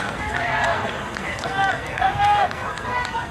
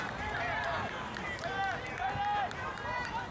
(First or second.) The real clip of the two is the second